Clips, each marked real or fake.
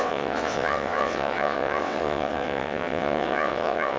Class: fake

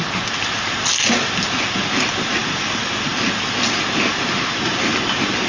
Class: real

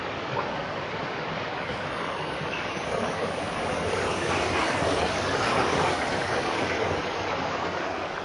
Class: fake